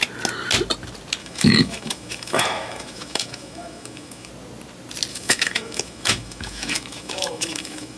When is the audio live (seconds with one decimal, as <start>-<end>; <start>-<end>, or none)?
0.0-1.2; 4.3-5.1